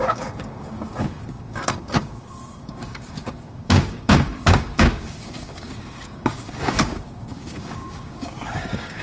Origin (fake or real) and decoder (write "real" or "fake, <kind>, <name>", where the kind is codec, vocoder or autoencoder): fake, codec, DAC